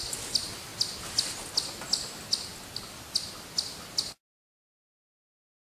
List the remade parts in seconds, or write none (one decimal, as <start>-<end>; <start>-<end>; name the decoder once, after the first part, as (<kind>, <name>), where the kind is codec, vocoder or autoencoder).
none